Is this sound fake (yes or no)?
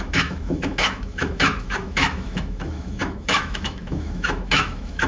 yes